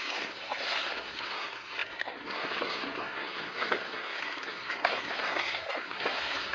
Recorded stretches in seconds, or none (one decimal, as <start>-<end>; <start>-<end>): none